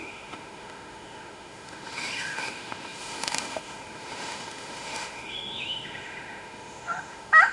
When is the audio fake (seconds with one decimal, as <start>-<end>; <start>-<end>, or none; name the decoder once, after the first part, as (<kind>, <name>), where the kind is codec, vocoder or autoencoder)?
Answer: 0.0-7.5 (autoencoder, DAC-VAE)